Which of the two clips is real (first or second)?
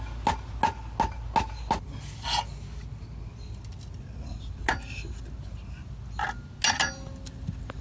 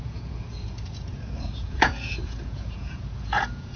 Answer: first